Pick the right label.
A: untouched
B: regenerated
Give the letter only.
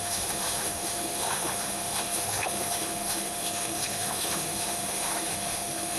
B